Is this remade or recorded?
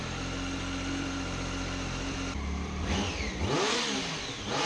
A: recorded